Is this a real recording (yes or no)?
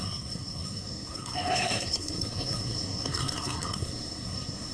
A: no